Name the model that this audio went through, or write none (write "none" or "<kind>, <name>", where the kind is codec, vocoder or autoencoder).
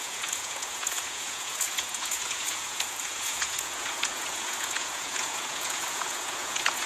vocoder, Vocos